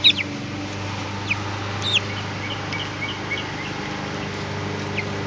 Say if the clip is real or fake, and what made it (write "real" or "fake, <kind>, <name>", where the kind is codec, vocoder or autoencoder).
real